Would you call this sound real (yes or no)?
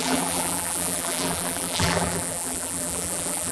no